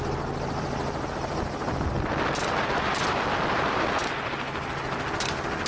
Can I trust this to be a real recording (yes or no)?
yes